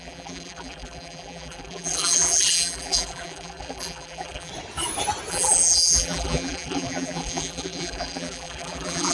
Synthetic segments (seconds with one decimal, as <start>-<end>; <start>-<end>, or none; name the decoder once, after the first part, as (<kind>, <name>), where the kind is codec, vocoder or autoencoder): 0.0-4.5 (vocoder, BigVGAN v2); 5.3-9.1